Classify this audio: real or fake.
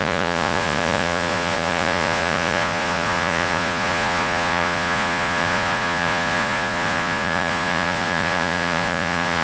fake